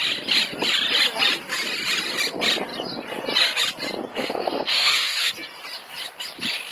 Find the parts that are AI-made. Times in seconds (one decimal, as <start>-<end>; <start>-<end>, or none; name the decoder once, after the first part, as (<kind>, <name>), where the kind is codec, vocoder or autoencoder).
4.1-5.3 (autoencoder, DAC-VAE)